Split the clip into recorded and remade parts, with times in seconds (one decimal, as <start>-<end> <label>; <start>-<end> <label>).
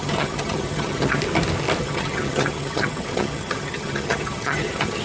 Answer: 0.0-1.2 remade; 1.2-1.8 recorded; 1.8-5.0 remade